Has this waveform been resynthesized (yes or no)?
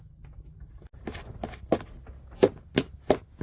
no